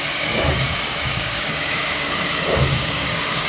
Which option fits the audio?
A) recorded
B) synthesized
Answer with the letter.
B